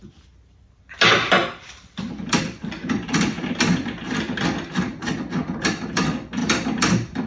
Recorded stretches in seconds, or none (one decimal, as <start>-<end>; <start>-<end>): 0.0-1.4; 4.4-5.0; 5.9-6.4